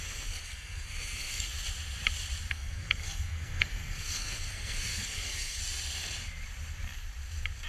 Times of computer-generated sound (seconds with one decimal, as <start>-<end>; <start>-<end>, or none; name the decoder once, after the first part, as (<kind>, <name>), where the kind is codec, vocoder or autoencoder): 0.0-1.5 (codec, SNAC); 2.5-5.6